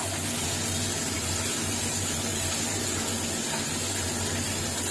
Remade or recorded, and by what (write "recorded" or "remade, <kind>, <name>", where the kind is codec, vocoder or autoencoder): recorded